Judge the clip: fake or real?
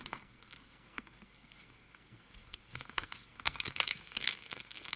fake